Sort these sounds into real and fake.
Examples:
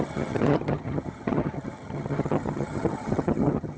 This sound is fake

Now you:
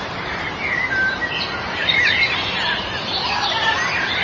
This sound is real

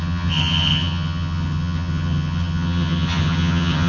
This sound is fake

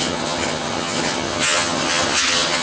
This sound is fake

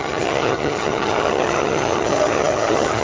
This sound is fake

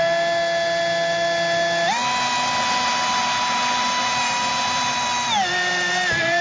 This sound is real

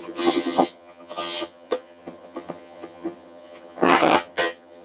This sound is fake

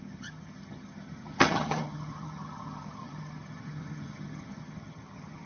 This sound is fake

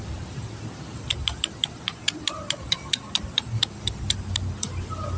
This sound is real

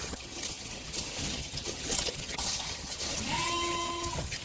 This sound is fake